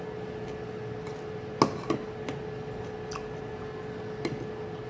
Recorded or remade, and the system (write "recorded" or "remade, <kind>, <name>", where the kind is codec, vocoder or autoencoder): recorded